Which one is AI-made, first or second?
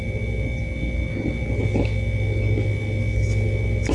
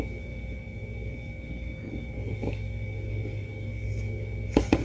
second